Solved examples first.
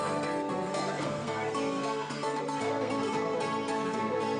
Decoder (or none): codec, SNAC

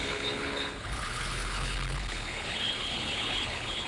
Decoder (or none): codec, HILCodec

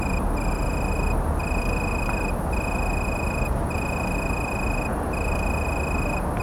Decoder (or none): none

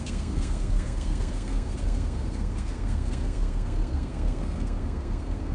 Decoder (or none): codec, SNAC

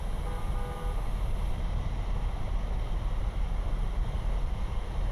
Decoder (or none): none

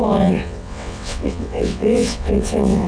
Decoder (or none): vocoder, WaveNeXt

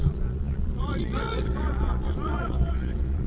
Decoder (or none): vocoder, Vocos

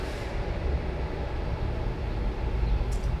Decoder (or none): none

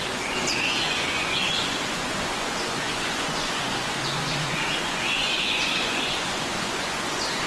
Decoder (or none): vocoder, Vocos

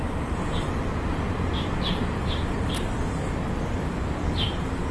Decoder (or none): none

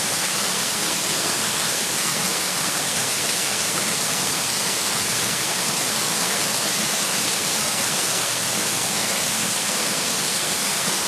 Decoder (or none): codec, SNAC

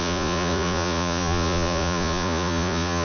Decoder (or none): vocoder, Vocos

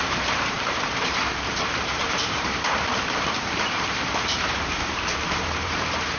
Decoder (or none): vocoder, BigVGAN v2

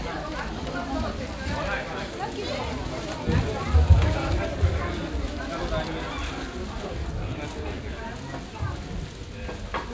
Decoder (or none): none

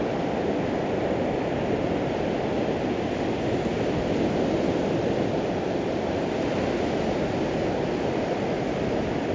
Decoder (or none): none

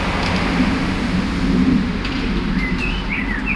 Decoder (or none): none